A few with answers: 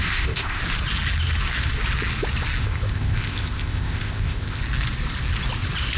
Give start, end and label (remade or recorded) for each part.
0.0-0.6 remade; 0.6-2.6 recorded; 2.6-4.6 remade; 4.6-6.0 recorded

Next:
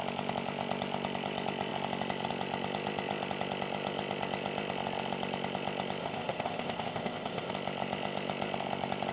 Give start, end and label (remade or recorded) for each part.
0.0-6.0 recorded; 6.0-7.5 remade; 7.5-9.1 recorded